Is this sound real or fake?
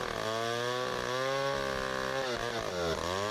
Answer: real